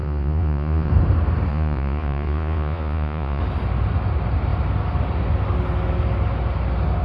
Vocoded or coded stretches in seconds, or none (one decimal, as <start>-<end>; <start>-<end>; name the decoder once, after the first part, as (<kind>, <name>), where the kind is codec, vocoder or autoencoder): 0.0-0.9 (vocoder, Vocos); 1.5-3.4